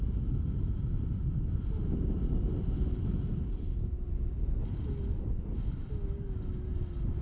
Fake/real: real